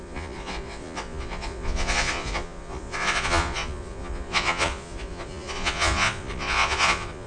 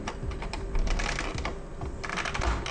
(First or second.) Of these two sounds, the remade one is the first